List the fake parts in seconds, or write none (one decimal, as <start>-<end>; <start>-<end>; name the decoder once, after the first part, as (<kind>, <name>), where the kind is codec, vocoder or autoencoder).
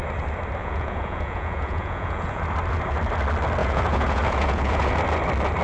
0.6-2.4 (vocoder, Vocos); 3.6-5.0